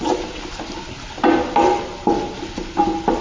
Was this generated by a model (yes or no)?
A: no